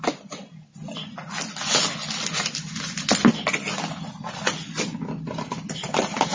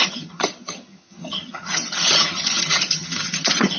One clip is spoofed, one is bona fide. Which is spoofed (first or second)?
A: second